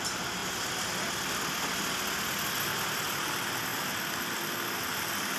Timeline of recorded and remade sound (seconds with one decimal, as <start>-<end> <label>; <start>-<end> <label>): 0.0-0.4 recorded; 0.4-1.3 remade; 1.3-5.4 recorded